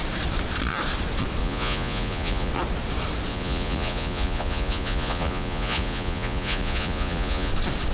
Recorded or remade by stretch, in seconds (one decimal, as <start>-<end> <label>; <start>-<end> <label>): 0.0-1.4 recorded; 1.4-2.5 remade; 2.5-3.3 recorded; 3.3-7.5 remade; 7.5-7.9 recorded